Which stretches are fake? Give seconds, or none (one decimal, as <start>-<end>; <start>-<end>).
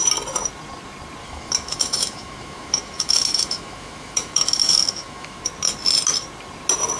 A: 1.2-5.4